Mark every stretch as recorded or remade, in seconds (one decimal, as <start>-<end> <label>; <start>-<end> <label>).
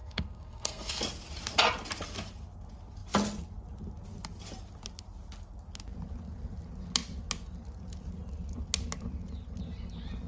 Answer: 0.0-1.0 remade; 1.0-10.3 recorded